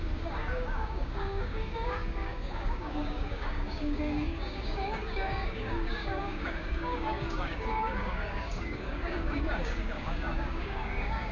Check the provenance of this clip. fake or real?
fake